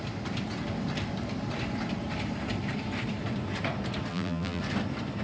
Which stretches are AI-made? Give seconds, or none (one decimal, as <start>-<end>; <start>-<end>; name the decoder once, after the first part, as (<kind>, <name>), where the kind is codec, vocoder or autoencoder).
4.1-4.6 (vocoder, BigVGAN v2)